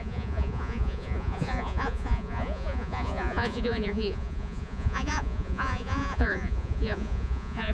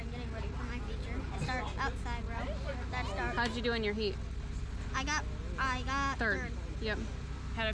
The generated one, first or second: first